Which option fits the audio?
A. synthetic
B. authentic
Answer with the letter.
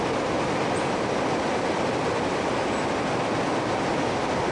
B